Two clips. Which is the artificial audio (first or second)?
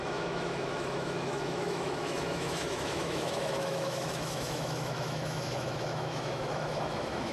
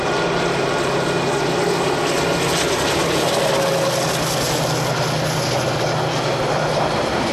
first